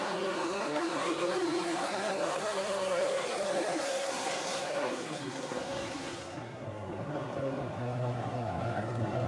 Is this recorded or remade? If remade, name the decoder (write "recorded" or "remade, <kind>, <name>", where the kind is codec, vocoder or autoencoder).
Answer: remade, codec, SNAC